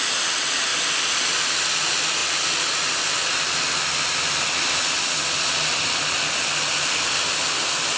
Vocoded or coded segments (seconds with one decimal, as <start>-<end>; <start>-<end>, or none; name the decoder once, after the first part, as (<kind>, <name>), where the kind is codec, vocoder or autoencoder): none